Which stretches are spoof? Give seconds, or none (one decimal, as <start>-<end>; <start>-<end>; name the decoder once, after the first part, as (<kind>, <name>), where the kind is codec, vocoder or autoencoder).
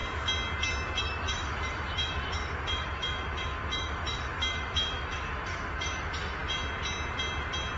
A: 1.0-6.4 (autoencoder, DAC-VAE)